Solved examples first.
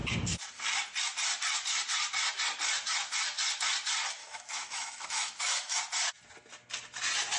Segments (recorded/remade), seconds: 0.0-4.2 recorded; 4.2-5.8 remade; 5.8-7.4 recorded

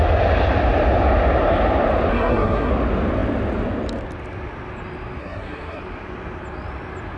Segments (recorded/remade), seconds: 0.0-2.1 recorded; 2.1-2.7 remade; 2.7-5.2 recorded; 5.2-5.8 remade; 5.8-7.2 recorded

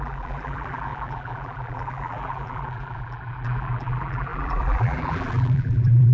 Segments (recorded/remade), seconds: 0.0-6.1 remade

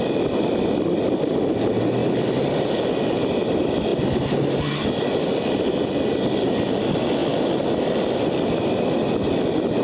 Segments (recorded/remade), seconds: 0.0-2.0 recorded; 2.0-2.6 remade; 2.6-3.9 recorded; 3.9-5.9 remade; 5.9-7.2 recorded; 7.2-8.7 remade; 8.7-9.8 recorded